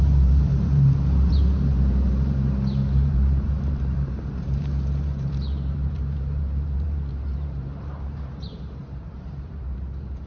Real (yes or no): no